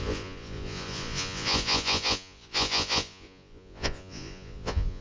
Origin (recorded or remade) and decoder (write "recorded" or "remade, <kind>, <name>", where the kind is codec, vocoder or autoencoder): remade, vocoder, Vocos